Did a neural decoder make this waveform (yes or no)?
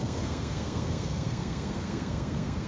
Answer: yes